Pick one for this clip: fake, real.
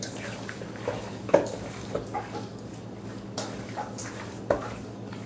fake